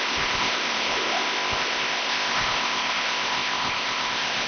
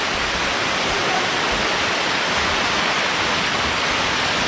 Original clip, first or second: second